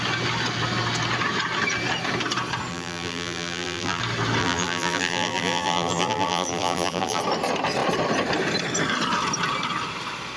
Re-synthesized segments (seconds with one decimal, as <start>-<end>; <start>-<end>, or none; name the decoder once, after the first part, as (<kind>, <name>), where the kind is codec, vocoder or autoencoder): 2.7-4.0 (vocoder, BigVGAN v2); 4.4-7.2